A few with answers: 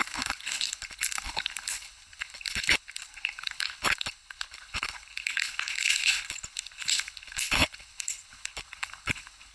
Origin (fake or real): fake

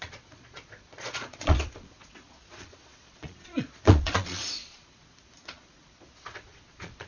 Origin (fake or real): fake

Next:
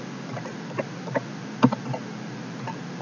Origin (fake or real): real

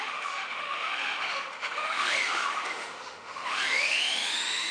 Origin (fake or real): fake